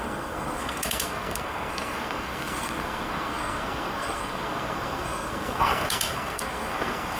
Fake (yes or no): yes